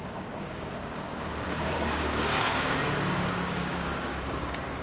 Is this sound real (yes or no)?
no